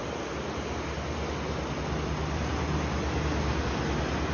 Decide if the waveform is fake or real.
real